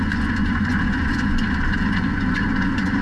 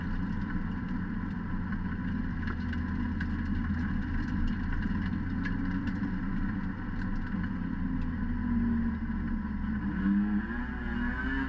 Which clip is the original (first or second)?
second